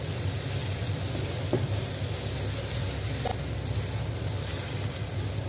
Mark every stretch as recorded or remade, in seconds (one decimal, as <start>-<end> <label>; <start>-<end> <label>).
0.0-5.5 recorded